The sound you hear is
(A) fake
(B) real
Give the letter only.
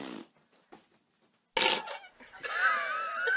B